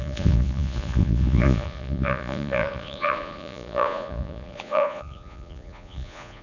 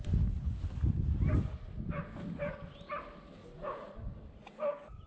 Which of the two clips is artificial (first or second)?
first